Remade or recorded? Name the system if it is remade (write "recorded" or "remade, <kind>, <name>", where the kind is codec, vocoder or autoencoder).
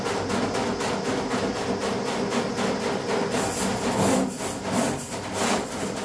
recorded